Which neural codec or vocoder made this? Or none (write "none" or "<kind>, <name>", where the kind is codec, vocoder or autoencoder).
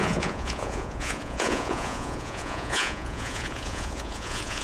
vocoder, Vocos